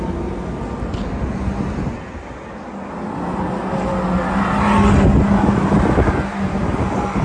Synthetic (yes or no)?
no